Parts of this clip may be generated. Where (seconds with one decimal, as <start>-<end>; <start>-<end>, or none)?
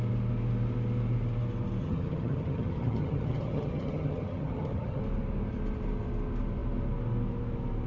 1.8-5.0